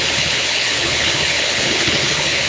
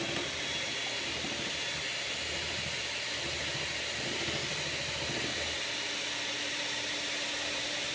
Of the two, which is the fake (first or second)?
first